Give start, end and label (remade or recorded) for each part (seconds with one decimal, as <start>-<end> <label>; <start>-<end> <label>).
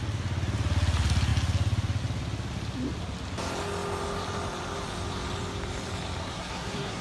0.0-6.2 recorded; 6.2-7.0 remade